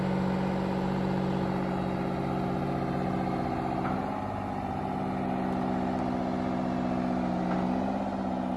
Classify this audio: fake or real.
real